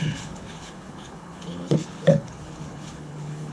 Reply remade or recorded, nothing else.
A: remade